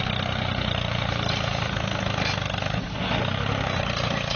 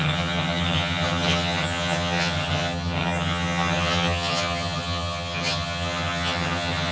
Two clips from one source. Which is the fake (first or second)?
second